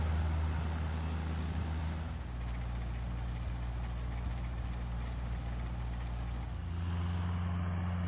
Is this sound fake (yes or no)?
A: no